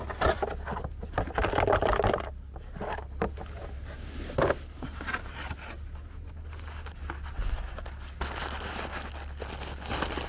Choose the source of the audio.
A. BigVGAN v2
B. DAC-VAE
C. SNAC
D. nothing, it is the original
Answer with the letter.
D